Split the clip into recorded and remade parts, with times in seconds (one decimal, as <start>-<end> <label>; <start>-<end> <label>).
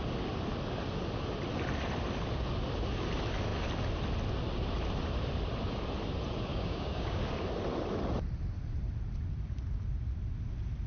0.0-6.5 recorded; 6.5-7.2 remade; 7.2-10.9 recorded